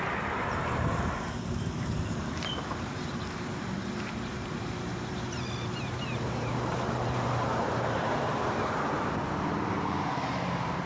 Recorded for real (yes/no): no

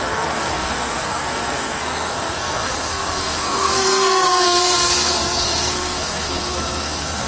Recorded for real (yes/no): no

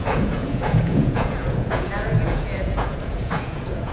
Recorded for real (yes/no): no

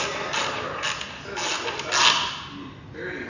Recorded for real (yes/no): yes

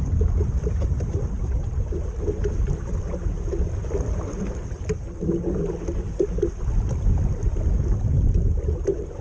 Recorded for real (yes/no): yes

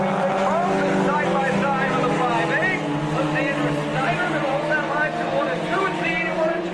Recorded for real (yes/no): yes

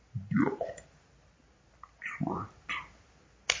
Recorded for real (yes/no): yes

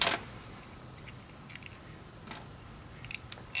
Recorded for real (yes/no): yes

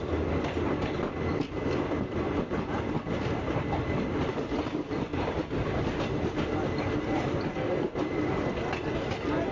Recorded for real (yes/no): yes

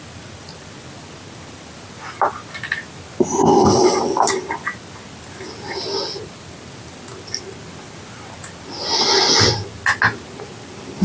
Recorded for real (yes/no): yes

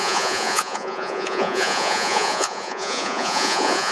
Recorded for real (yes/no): no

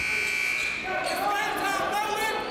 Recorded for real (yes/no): yes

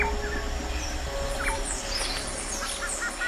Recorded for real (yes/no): yes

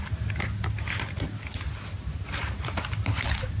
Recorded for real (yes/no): yes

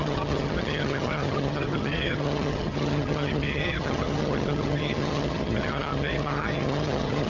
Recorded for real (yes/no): no